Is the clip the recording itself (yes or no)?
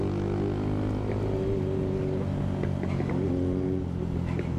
yes